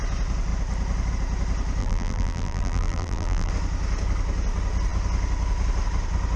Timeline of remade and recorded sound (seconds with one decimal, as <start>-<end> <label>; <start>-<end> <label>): 0.0-1.8 recorded; 1.8-3.5 remade; 3.5-6.4 recorded